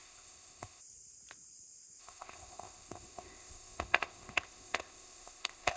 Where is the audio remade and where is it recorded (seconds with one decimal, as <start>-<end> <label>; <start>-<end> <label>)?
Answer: 0.0-0.8 remade; 0.8-2.0 recorded; 2.0-5.8 remade